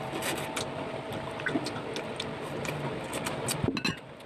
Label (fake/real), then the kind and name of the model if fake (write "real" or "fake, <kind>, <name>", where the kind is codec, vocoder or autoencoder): real